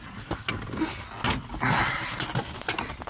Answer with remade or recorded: recorded